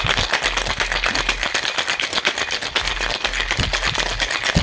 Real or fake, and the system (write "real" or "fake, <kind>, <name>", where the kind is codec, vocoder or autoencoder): real